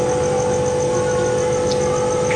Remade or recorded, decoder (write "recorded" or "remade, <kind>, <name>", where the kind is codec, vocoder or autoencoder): recorded